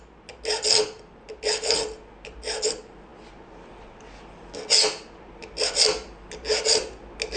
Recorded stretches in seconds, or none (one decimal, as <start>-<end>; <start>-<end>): 0.0-7.4